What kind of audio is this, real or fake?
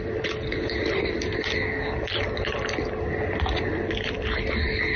real